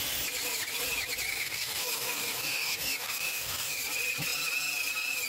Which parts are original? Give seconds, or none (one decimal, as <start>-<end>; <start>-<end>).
0.0-1.3; 3.8-5.3